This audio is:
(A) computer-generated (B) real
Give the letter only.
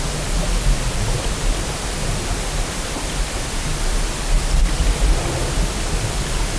B